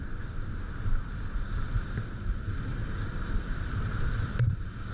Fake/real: fake